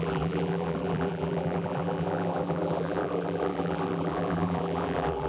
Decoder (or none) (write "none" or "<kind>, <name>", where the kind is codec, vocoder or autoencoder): vocoder, BigVGAN v2